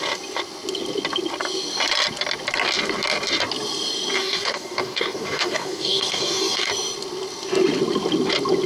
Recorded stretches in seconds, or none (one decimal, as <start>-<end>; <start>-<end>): 0.0-4.2; 6.7-8.7